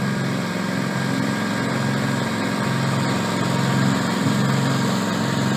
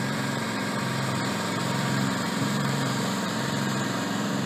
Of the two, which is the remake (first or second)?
second